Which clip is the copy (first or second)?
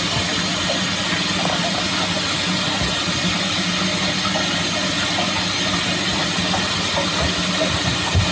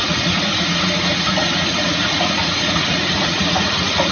second